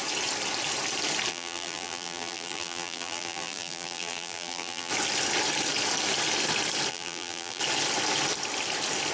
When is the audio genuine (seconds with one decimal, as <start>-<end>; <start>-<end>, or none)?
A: 0.0-1.3; 4.9-6.9; 7.6-9.1